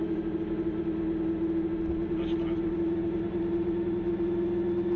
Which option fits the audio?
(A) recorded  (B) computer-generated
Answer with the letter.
A